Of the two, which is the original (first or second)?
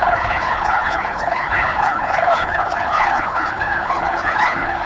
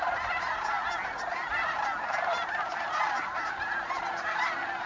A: second